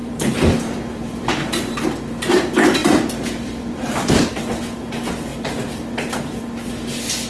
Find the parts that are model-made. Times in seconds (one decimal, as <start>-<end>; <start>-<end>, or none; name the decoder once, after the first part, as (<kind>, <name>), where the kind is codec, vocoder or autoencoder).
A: 0.0-1.3 (vocoder, BigVGAN v2); 2.8-4.4; 5.3-6.4